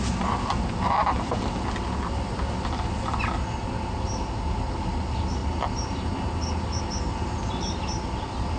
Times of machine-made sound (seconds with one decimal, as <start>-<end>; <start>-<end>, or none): none